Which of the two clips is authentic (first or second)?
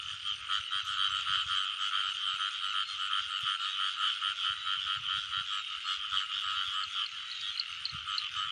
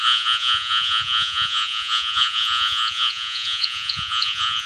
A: first